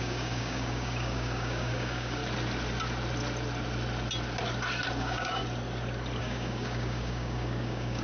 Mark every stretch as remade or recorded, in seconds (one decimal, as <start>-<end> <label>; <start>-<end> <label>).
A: 0.0-2.2 remade; 2.2-5.0 recorded; 5.0-5.4 remade; 5.4-6.2 recorded; 6.2-8.0 remade